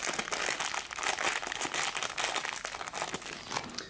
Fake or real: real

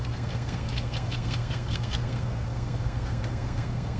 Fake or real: fake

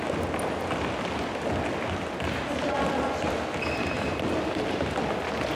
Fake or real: real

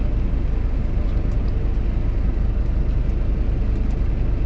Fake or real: real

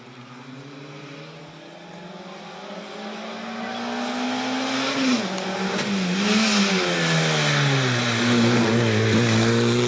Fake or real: real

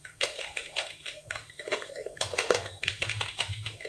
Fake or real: fake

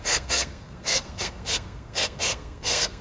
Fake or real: fake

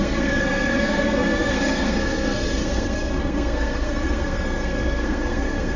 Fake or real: fake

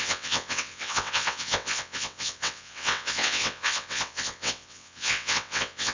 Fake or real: fake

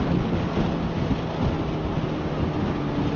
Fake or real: real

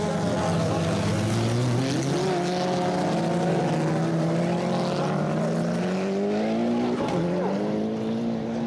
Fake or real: real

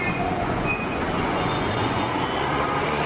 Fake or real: fake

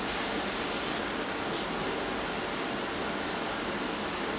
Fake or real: real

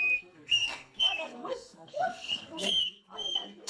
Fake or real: fake